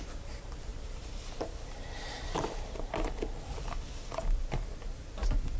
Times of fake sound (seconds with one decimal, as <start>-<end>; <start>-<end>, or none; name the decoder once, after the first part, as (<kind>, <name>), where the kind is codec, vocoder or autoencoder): 0.7-3.3 (vocoder, BigVGAN v2)